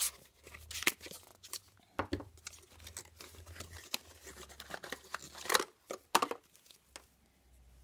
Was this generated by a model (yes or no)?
no